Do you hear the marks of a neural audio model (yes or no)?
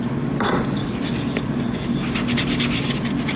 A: no